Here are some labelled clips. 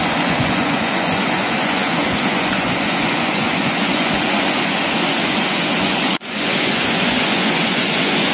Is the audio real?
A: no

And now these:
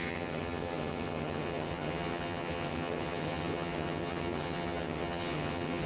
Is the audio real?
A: no